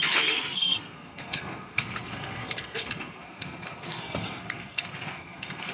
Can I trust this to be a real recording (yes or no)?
no